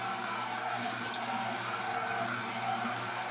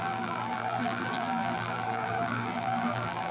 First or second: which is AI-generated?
second